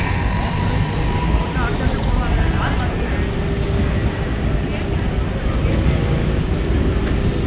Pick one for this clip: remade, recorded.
recorded